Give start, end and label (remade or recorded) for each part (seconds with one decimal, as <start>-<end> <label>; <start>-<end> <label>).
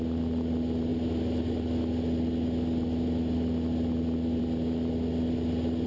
0.0-5.9 recorded